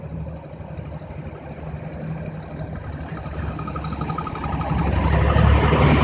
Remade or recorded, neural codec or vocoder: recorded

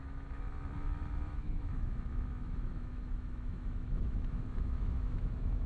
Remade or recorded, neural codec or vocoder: remade, autoencoder, DAC-VAE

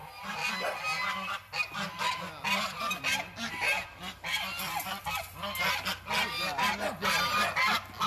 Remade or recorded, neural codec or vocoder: recorded